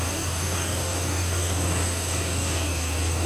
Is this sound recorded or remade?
remade